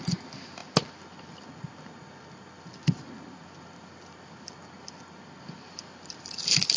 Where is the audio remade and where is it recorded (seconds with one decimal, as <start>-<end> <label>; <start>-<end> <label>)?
0.0-6.8 recorded